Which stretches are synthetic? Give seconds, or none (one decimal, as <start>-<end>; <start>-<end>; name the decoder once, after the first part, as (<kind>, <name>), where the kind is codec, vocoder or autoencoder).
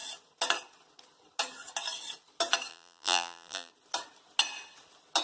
2.7-3.7 (vocoder, BigVGAN v2)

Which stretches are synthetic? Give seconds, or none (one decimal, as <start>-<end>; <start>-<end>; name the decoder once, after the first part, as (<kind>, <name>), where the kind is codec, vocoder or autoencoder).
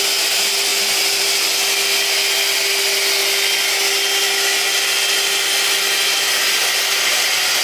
none